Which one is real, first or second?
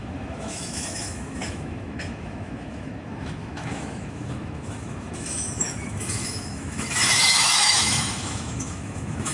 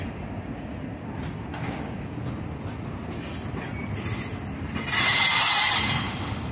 second